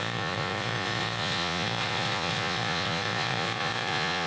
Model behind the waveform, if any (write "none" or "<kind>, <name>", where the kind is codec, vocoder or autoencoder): vocoder, Vocos